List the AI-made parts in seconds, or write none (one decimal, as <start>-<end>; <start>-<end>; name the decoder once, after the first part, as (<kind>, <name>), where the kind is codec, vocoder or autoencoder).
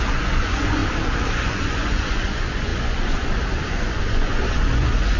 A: 0.0-0.8 (vocoder, Vocos); 1.3-5.2